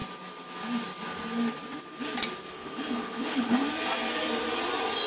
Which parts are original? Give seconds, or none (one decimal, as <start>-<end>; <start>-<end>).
0.0-2.5; 3.6-5.1